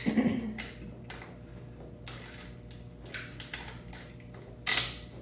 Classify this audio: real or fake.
real